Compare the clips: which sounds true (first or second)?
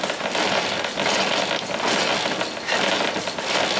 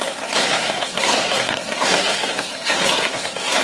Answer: first